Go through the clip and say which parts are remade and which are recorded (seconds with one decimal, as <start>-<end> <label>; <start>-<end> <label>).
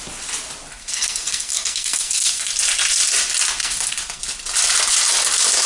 0.0-0.7 recorded; 0.7-2.5 remade; 2.5-3.6 recorded; 3.6-4.2 remade; 4.2-5.7 recorded